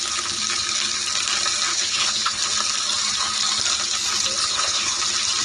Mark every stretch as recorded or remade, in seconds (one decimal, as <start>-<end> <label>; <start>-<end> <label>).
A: 0.0-1.7 recorded; 1.7-2.4 remade; 2.4-4.4 recorded; 4.4-5.0 remade; 5.0-5.4 recorded